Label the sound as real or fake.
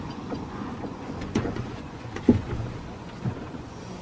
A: fake